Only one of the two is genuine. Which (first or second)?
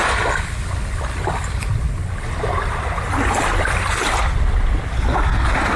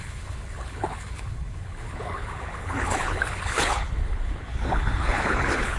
first